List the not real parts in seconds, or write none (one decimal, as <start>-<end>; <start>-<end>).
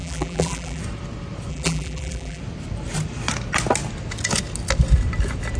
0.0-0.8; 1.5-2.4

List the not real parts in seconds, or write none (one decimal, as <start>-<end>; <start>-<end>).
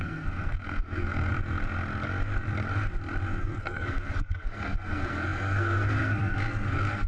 0.0-1.3; 3.4-7.1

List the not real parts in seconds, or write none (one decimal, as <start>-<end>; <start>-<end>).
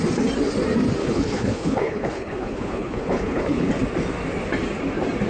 1.0-3.7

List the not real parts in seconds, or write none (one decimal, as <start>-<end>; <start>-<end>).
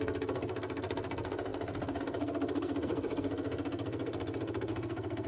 0.0-5.3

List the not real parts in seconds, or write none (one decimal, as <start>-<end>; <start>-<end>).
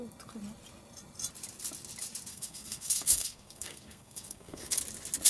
2.3-4.8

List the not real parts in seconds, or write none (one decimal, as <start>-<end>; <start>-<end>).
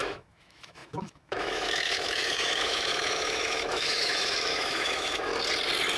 0.0-5.3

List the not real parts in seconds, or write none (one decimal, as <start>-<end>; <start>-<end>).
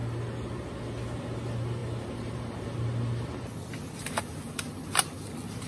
none